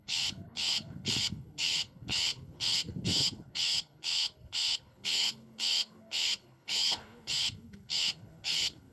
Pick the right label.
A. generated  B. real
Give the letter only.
A